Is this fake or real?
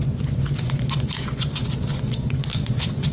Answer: fake